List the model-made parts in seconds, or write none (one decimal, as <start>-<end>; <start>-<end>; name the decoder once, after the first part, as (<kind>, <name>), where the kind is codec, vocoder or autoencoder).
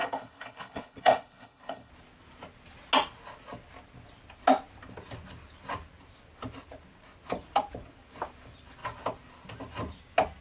0.0-1.9 (codec, HILCodec)